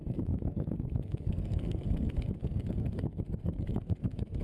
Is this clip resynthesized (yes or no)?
yes